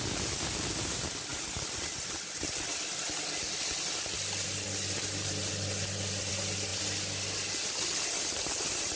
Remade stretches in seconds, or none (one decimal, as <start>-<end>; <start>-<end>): none